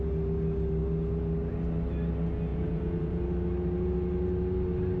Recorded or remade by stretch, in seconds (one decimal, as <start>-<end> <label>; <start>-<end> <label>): 0.0-2.5 recorded; 2.5-3.2 remade; 3.2-5.0 recorded